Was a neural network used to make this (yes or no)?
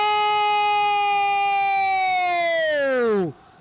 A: no